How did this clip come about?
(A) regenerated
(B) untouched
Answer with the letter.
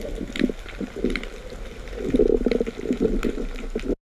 B